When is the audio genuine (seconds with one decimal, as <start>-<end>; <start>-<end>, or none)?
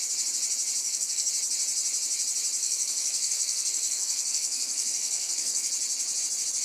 0.0-0.8; 1.3-2.6; 5.7-6.6